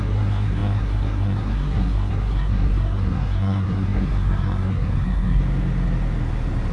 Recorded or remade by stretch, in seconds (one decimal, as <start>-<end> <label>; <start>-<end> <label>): 0.0-5.4 remade; 5.4-6.7 recorded